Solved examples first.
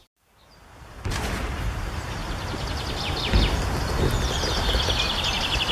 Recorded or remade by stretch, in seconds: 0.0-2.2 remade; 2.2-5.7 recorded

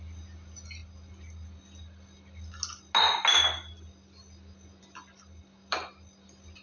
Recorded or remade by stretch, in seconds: 0.0-6.6 recorded

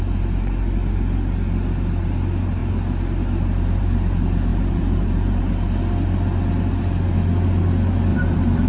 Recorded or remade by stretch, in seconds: 0.0-4.5 recorded; 4.5-5.4 remade; 5.4-8.1 recorded; 8.1-8.7 remade

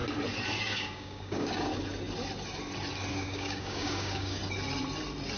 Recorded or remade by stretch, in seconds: 0.0-0.6 recorded; 0.6-1.7 remade; 1.7-3.1 recorded; 3.1-4.4 remade; 4.4-5.4 recorded